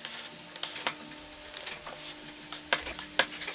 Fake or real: real